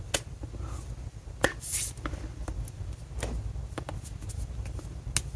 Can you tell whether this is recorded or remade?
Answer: recorded